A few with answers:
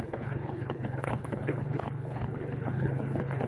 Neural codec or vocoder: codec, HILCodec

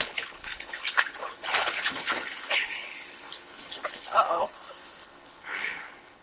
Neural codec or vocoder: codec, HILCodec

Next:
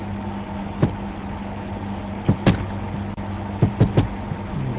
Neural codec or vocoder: none